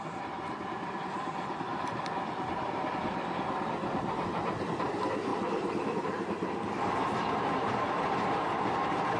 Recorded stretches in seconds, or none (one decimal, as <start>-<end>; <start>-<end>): 0.0-9.2